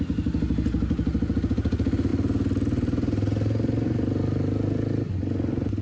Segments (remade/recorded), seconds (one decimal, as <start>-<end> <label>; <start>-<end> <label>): 0.0-5.8 recorded